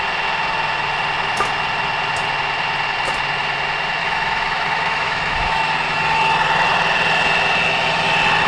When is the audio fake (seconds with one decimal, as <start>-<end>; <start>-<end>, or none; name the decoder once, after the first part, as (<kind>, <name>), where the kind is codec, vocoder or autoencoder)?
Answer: 4.0-5.6 (autoencoder, DAC-VAE)